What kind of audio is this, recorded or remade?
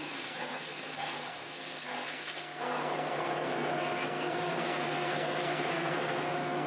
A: remade